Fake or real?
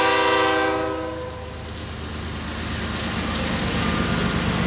real